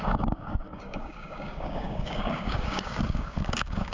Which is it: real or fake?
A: fake